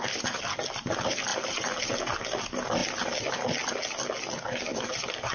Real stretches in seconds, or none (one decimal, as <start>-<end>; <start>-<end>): 0.0-1.3; 1.9-4.7